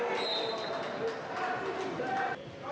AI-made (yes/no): no